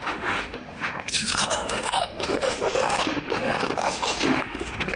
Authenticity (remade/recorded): remade